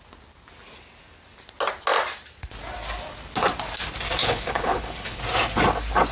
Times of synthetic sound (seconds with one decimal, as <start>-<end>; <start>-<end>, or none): 4.2-5.2